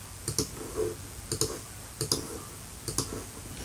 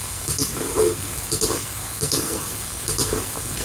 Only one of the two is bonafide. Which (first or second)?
first